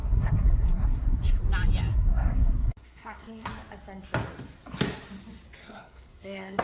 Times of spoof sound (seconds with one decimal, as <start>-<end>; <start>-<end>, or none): 0.0-1.4; 1.9-3.5; 5.6-6.6